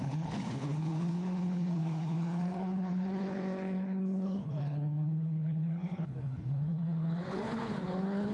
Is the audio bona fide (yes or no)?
no